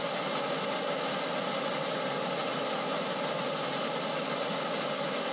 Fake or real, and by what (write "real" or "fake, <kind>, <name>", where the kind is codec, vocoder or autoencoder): real